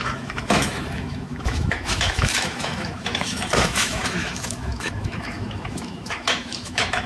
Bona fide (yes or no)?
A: no